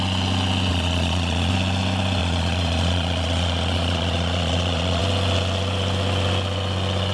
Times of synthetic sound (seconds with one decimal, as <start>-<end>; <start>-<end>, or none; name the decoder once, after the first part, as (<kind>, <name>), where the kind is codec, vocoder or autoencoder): 0.7-1.5 (vocoder, Vocos); 2.2-5.0